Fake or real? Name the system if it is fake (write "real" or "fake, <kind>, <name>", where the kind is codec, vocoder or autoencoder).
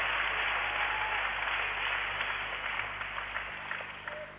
real